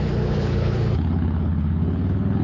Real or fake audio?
fake